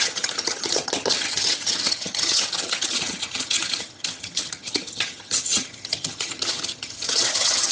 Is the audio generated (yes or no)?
yes